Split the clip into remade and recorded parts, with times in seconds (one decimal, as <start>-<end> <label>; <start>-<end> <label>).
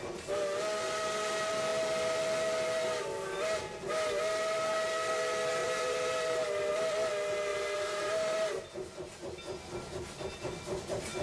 0.0-5.6 recorded; 5.6-6.7 remade; 6.7-7.5 recorded; 7.5-8.6 remade; 8.6-11.2 recorded